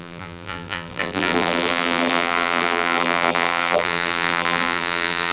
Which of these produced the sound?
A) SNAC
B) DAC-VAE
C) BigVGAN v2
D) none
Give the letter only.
C